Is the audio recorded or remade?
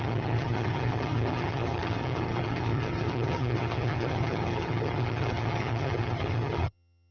remade